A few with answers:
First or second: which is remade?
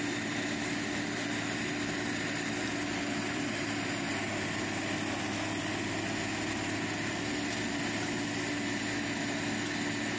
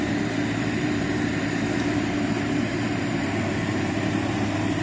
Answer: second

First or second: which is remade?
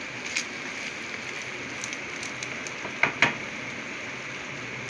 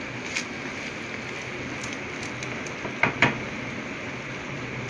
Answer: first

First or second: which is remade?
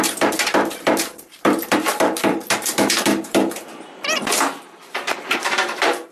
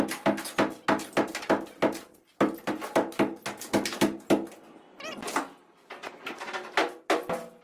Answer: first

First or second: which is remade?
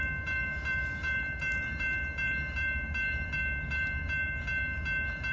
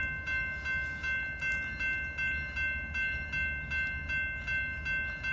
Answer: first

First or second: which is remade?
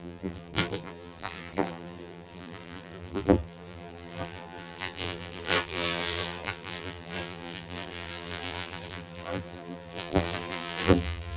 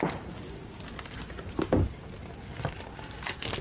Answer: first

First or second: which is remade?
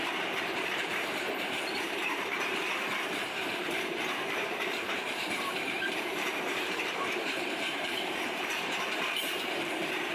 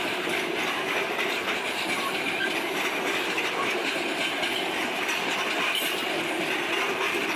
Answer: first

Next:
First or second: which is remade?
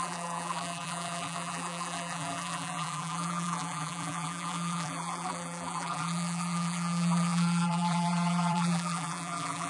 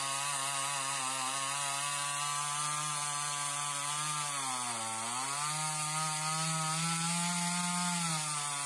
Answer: first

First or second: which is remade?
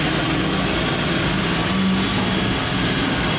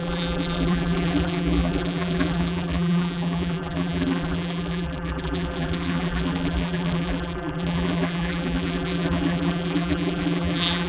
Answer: second